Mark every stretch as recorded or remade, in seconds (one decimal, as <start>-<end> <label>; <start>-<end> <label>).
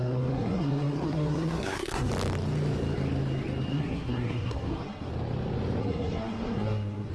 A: 0.0-2.1 remade; 2.1-3.7 recorded; 3.7-5.1 remade; 5.1-5.8 recorded; 5.8-7.1 remade